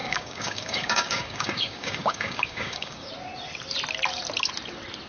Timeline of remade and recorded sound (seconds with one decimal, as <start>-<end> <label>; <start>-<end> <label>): 0.0-3.1 remade; 3.1-5.1 recorded